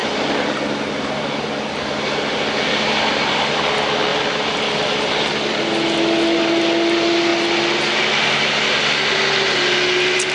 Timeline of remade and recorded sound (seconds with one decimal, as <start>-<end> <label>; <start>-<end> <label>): 0.0-10.3 recorded